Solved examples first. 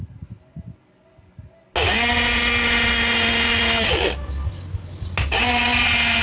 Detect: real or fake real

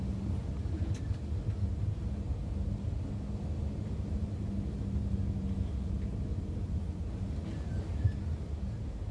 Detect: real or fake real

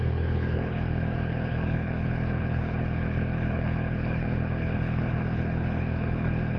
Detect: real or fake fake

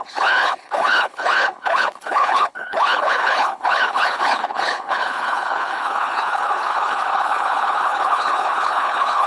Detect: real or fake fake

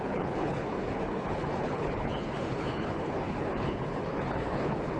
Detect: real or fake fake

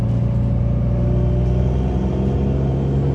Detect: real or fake real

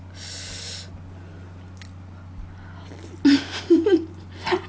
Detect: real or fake real